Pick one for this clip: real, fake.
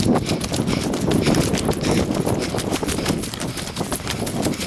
fake